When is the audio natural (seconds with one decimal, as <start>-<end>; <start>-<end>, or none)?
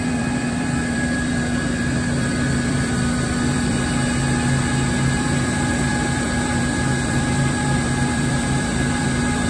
4.0-5.2